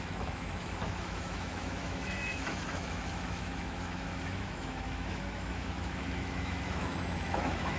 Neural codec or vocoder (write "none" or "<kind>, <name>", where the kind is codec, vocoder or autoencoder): autoencoder, DAC-VAE